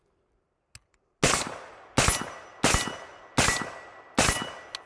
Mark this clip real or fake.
real